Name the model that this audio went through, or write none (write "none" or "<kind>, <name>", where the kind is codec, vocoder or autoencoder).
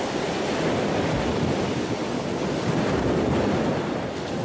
none